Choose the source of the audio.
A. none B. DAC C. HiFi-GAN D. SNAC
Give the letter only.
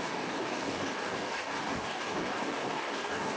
B